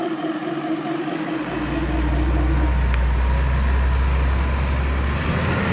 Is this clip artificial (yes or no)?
no